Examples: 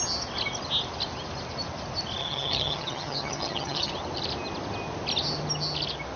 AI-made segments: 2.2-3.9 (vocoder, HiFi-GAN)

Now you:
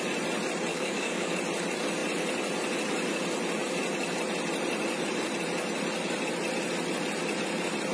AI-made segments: 0.7-1.3 (codec, DAC)

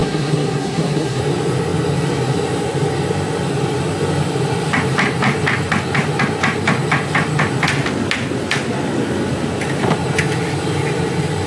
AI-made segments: 0.0-1.2 (codec, SNAC)

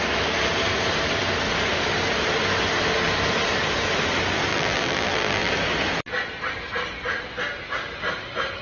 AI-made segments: 4.5-5.5 (vocoder, BigVGAN v2)

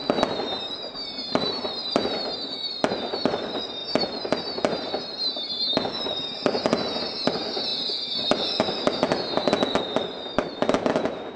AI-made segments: 1.3-1.8 (vocoder, BigVGAN v2); 3.2-3.8; 4.4-7.7; 9.8-11.4

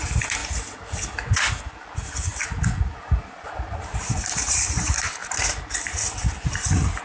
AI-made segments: none

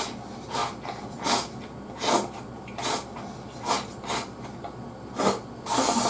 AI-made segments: none

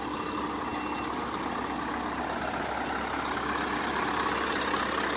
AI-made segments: none